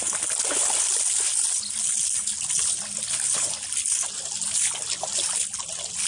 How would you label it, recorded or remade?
recorded